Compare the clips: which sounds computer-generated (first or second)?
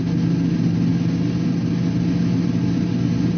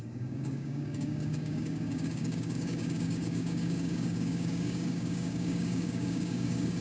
second